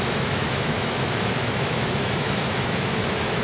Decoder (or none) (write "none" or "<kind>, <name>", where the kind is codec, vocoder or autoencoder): autoencoder, DAC-VAE